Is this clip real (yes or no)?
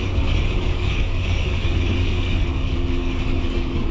no